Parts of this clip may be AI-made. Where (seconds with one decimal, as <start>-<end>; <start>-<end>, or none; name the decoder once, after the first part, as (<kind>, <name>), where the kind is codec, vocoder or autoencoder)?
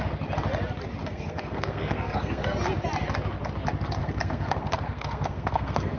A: 1.0-2.6 (codec, SNAC); 4.0-6.0